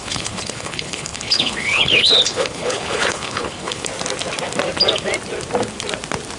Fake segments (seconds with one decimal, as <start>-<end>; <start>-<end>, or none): 0.0-3.9